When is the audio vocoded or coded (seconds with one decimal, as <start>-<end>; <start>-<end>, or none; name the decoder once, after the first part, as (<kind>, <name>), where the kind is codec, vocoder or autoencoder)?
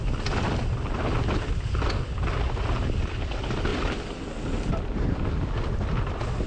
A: none